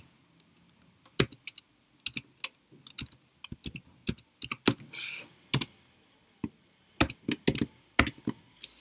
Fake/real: real